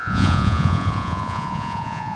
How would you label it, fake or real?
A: fake